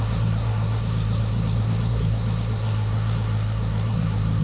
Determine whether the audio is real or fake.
fake